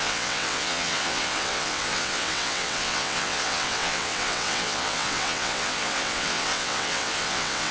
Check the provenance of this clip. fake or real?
fake